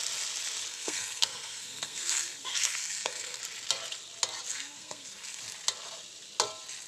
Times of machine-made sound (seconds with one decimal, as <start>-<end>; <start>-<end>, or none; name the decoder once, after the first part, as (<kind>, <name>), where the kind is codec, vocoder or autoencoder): 0.7-3.4 (codec, SNAC); 4.5-5.4